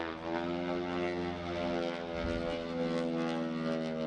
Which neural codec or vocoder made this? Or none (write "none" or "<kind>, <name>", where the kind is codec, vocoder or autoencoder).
none